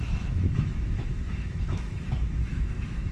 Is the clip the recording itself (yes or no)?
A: no